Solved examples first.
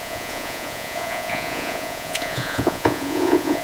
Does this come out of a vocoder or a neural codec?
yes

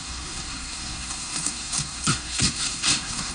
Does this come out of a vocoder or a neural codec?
yes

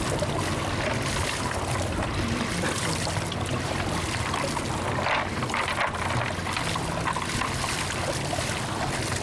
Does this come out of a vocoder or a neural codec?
no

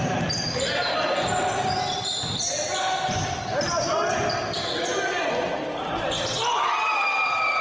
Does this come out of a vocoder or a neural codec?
no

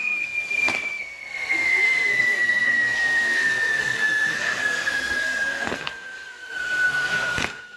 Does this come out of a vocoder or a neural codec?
yes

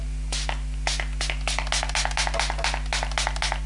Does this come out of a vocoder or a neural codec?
no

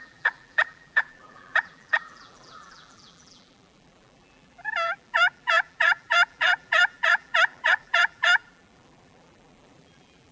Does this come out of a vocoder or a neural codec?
yes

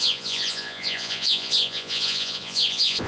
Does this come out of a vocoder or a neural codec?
yes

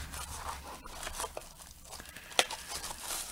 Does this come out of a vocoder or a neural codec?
no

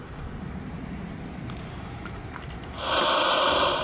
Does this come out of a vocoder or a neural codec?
yes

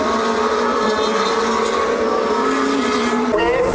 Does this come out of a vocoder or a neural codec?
no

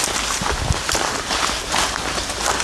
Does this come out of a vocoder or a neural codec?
no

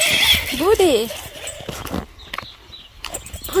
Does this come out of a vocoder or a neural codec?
no